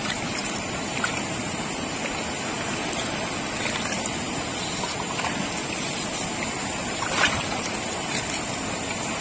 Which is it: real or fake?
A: real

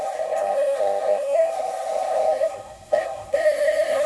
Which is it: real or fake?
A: fake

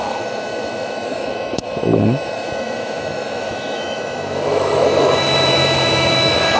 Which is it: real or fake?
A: fake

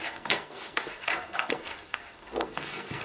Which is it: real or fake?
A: fake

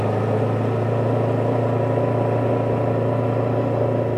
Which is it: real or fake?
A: real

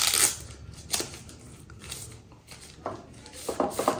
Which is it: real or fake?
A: real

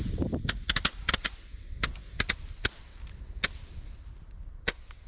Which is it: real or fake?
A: real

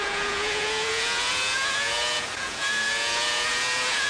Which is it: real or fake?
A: fake